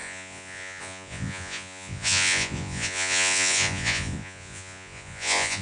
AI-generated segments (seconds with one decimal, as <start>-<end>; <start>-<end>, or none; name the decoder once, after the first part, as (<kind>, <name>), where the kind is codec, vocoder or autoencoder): 0.0-5.6 (vocoder, Vocos)